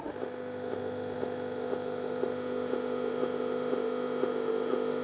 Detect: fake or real fake